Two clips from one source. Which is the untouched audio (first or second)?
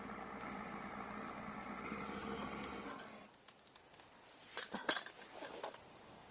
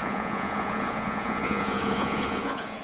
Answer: first